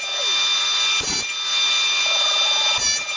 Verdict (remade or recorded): recorded